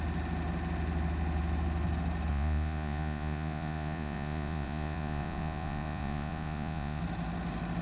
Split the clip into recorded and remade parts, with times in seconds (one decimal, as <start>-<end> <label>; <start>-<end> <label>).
0.0-2.3 recorded; 2.3-7.0 remade; 7.0-7.8 recorded

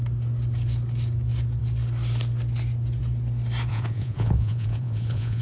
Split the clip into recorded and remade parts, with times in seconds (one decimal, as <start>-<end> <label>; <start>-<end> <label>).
0.0-3.7 recorded; 3.7-5.4 remade

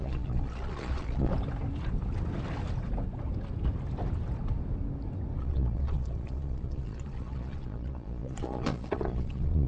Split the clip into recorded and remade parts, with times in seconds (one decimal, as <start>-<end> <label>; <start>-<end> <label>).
0.0-1.3 remade; 1.3-5.4 recorded; 5.4-9.7 remade

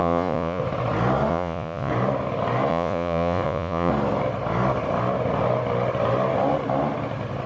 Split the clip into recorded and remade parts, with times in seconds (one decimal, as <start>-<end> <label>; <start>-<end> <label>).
0.0-0.6 remade; 0.6-1.3 recorded; 1.3-1.9 remade; 1.9-2.7 recorded; 2.7-3.9 remade; 3.9-7.5 recorded